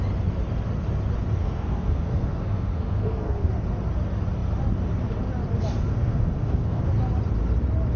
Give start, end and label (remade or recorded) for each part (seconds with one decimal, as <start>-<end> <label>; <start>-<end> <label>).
0.0-1.4 recorded; 1.4-3.5 remade; 3.5-5.9 recorded; 5.9-6.8 remade; 6.8-8.0 recorded